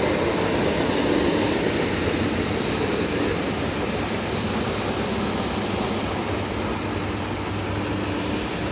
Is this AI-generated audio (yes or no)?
no